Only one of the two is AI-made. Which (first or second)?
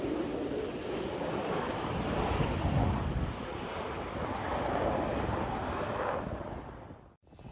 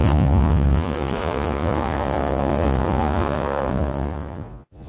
second